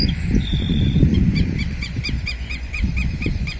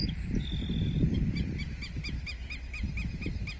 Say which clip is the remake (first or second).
first